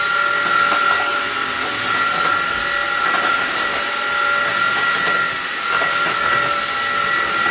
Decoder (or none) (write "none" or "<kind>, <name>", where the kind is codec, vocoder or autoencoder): none